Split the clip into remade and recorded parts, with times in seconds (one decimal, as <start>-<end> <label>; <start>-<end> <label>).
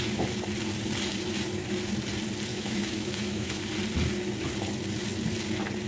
0.0-2.5 recorded; 2.5-3.6 remade; 3.6-5.9 recorded